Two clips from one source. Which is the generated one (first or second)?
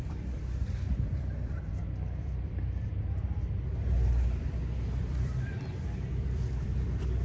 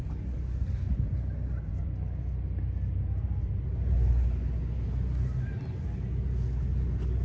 first